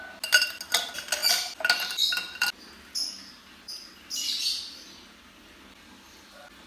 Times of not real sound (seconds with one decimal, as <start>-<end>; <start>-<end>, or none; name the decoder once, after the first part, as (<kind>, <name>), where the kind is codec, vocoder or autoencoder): none